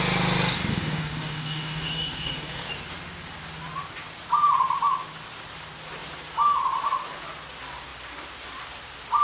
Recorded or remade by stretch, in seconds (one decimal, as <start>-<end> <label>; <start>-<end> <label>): 0.0-0.7 recorded; 0.7-2.7 remade; 2.7-9.2 recorded